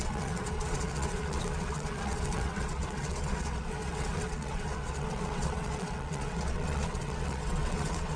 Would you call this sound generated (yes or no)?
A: yes